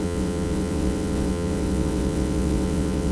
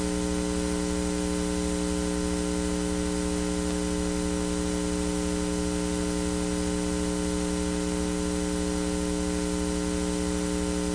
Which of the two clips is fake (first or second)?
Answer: first